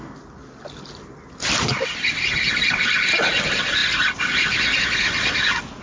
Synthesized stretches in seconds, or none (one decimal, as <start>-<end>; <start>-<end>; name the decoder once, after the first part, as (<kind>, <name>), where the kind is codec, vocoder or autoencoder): none